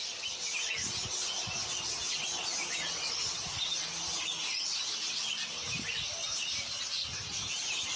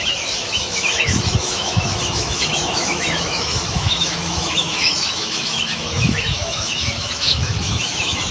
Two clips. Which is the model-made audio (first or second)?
second